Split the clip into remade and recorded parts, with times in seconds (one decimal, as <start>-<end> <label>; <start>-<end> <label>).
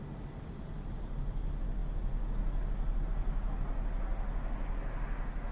0.0-5.5 recorded